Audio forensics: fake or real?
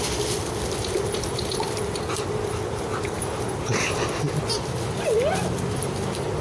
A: real